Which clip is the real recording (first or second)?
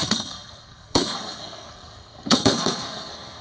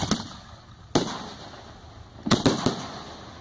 second